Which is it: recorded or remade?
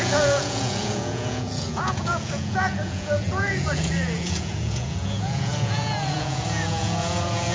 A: remade